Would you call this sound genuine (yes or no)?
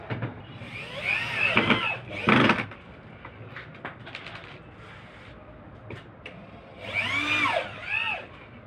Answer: yes